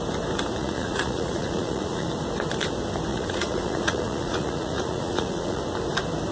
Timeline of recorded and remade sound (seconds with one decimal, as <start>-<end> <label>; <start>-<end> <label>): 0.0-0.6 recorded; 0.6-2.1 remade; 2.1-3.1 recorded; 3.1-5.6 remade; 5.6-6.3 recorded